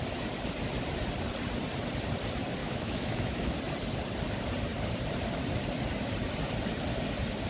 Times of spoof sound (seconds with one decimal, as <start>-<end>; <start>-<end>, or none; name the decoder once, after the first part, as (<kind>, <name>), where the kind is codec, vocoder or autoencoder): 2.6-3.5 (autoencoder, DAC-VAE)